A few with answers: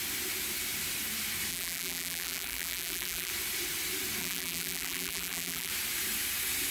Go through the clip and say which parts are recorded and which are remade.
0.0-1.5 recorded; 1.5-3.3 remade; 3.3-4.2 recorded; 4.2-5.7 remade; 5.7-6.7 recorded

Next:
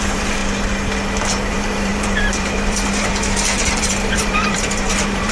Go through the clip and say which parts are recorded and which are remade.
0.0-0.4 remade; 0.4-1.5 recorded; 1.5-5.3 remade